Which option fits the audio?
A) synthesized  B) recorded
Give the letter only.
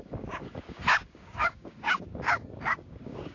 A